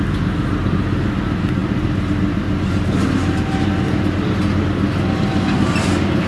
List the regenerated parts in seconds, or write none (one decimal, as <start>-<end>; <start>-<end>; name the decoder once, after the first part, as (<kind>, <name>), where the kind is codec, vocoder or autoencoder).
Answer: none

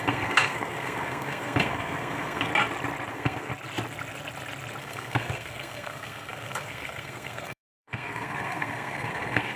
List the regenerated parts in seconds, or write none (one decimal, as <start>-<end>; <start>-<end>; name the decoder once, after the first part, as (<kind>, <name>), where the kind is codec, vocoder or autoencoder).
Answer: 0.0-2.5 (codec, SNAC); 3.1-3.5; 4.8-9.6

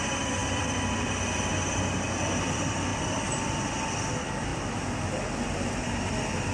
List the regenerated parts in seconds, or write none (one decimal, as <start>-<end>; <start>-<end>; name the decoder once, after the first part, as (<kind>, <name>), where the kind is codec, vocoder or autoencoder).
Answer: 0.4-1.6 (vocoder, BigVGAN v2); 2.9-3.9

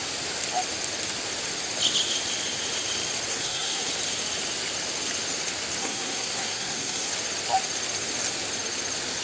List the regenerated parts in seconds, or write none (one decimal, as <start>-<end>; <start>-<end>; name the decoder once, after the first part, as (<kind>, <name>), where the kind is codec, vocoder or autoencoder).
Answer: 3.3-3.9 (codec, SNAC); 5.8-7.1

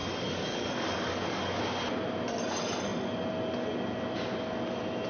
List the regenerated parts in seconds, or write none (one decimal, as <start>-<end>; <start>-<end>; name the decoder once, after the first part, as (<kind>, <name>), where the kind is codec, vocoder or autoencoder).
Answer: 0.0-1.6 (codec, DAC)